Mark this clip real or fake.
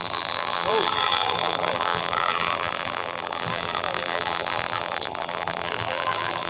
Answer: fake